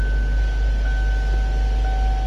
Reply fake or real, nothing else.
real